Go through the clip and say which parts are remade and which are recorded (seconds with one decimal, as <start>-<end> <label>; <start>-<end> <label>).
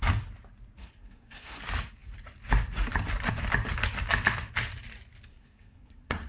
0.0-0.8 recorded; 0.8-1.6 remade; 1.6-5.3 recorded; 5.3-6.3 remade